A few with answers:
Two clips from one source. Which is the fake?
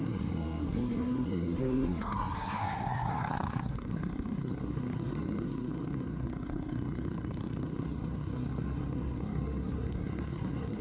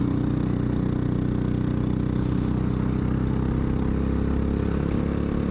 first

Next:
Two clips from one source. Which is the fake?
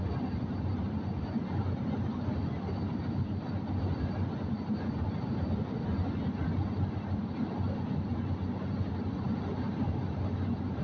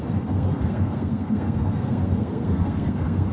second